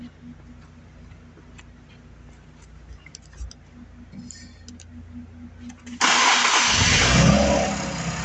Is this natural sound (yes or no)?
yes